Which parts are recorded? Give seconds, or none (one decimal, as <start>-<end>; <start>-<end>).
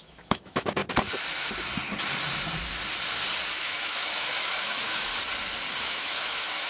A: 0.8-3.6; 5.1-5.8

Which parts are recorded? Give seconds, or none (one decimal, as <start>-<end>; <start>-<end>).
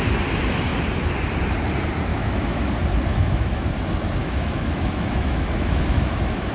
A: 0.0-2.1; 2.7-3.1; 3.7-4.2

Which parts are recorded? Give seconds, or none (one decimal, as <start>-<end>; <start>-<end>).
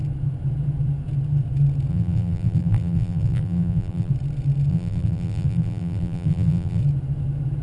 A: 0.0-1.9; 4.1-4.7; 6.8-7.6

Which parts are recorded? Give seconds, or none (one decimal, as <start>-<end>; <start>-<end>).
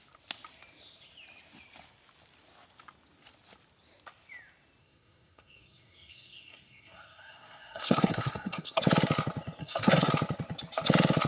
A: 0.0-4.8; 8.8-9.6; 10.1-11.3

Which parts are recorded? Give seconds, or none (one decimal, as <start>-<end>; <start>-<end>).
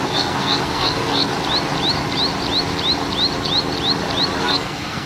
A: 1.3-4.4